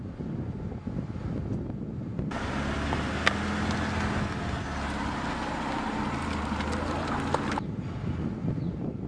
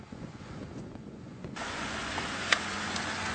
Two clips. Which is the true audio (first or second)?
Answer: first